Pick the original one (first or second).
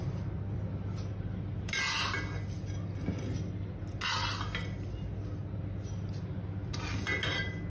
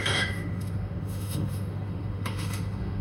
first